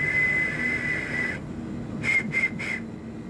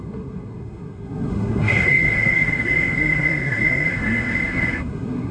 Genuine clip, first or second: first